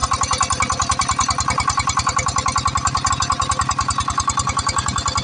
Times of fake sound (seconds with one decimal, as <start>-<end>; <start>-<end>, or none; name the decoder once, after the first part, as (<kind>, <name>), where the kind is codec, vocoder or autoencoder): none